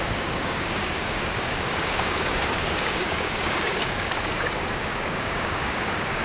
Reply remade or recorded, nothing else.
remade